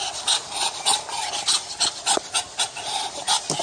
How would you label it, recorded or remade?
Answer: recorded